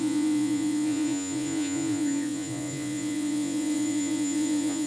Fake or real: fake